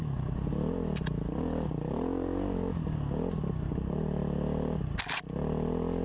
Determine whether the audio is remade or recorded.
recorded